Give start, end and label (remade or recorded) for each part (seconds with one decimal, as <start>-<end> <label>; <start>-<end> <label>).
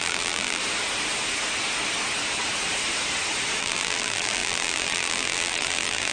0.0-0.6 remade; 0.6-3.6 recorded; 3.6-6.1 remade